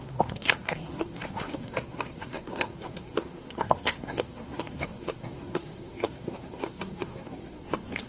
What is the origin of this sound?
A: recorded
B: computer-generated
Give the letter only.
B